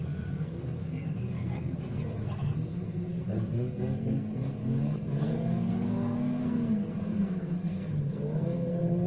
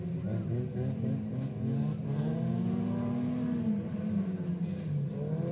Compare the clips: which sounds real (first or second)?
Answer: second